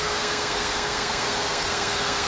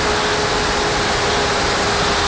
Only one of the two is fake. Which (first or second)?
first